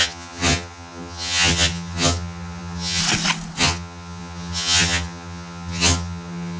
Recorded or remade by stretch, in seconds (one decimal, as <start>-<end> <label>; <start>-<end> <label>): 0.0-3.0 remade; 3.0-3.6 recorded; 3.6-6.6 remade